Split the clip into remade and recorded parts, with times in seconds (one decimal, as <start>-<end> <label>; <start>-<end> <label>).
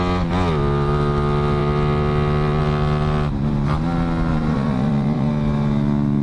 0.0-4.3 recorded; 4.3-5.3 remade; 5.3-6.2 recorded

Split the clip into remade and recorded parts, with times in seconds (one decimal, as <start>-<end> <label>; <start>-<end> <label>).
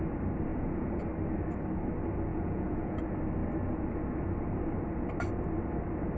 0.0-0.5 recorded; 0.5-1.0 remade; 1.0-2.3 recorded; 2.3-3.0 remade; 3.0-6.2 recorded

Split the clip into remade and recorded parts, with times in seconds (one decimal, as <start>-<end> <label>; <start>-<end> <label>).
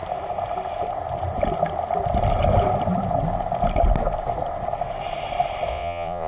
0.0-5.7 recorded; 5.7-6.3 remade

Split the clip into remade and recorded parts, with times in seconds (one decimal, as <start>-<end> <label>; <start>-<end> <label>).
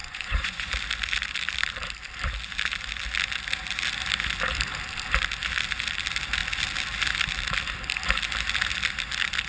0.0-0.7 remade; 0.7-9.5 recorded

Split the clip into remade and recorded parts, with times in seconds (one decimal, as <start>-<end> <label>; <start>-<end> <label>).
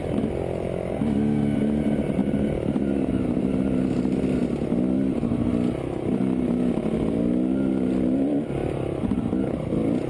0.0-10.1 recorded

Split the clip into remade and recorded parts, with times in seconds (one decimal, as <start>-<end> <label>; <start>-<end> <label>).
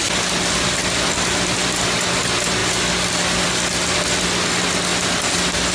0.0-5.7 recorded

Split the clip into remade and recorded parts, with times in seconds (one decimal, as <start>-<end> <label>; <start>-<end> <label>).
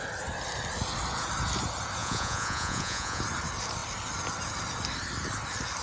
0.0-2.0 recorded; 2.0-3.2 remade; 3.2-5.8 recorded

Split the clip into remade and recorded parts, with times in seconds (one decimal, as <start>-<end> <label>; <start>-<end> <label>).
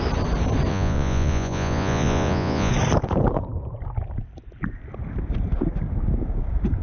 0.0-0.7 recorded; 0.7-2.7 remade; 2.7-6.8 recorded